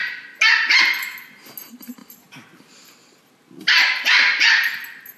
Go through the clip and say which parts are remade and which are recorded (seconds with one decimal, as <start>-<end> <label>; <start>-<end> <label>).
0.0-5.2 recorded